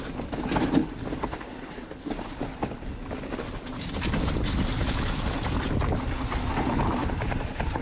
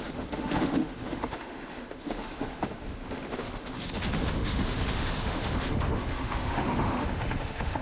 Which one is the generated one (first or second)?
second